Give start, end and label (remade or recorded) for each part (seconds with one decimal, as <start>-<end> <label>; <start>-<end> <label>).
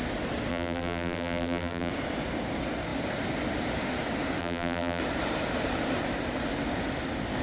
0.0-0.5 recorded; 0.5-1.9 remade; 1.9-4.4 recorded; 4.4-5.0 remade; 5.0-7.4 recorded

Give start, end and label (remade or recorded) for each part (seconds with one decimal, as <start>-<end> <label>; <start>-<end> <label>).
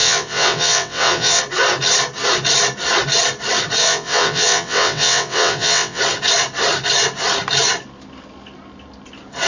0.0-1.4 remade; 1.4-3.8 recorded; 3.8-6.0 remade; 6.0-9.5 recorded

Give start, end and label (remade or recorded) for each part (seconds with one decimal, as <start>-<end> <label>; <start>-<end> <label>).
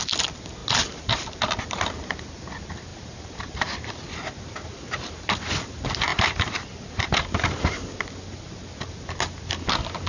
0.0-0.6 recorded; 0.6-1.4 remade; 1.4-2.9 recorded; 2.9-3.9 remade; 3.9-6.1 recorded; 6.1-8.0 remade; 8.0-10.1 recorded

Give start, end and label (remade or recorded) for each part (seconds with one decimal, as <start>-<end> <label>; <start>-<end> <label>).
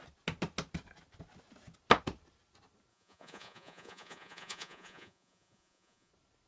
0.0-2.9 recorded; 2.9-6.1 remade; 6.1-6.5 recorded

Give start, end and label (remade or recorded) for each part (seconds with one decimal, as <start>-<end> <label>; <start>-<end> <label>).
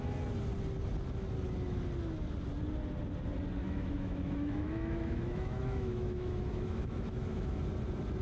0.0-3.6 recorded; 3.6-7.6 remade; 7.6-8.2 recorded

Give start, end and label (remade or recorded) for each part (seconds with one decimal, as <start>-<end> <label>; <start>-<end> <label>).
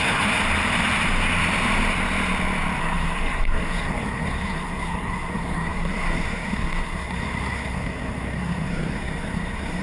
0.0-0.4 remade; 0.4-2.8 recorded; 2.8-9.8 remade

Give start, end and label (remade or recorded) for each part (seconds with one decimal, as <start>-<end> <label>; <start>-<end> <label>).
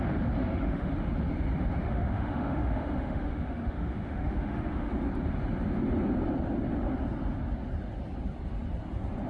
0.0-0.4 recorded; 0.4-0.9 remade; 0.9-1.8 recorded; 1.8-4.9 remade; 4.9-9.3 recorded